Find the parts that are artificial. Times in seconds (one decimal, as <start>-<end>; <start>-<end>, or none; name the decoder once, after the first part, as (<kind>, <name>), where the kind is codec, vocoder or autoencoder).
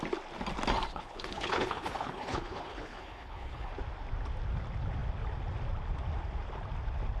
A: 0.9-3.7 (codec, HILCodec)